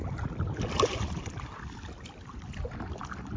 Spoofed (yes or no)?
no